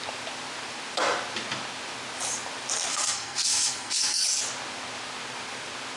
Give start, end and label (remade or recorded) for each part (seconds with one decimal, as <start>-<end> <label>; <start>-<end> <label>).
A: 0.0-2.9 recorded; 2.9-4.2 remade; 4.2-6.0 recorded